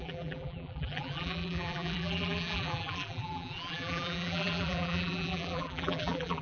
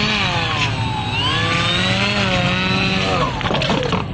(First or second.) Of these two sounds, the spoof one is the first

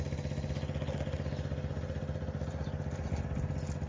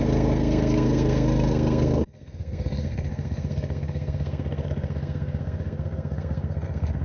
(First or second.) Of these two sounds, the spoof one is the second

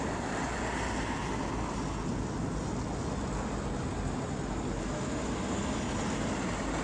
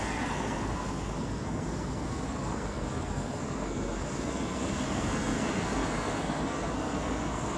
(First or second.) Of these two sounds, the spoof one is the second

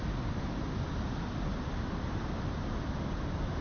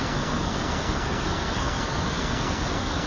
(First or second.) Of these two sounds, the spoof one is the second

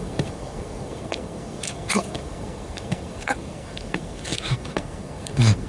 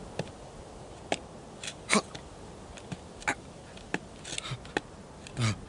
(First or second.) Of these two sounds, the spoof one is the first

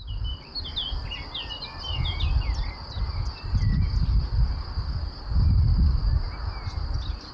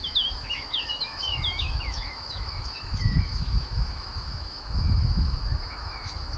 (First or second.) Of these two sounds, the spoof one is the second